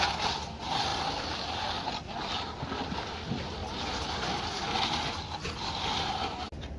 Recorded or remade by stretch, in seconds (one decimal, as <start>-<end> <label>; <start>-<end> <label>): 0.0-6.8 recorded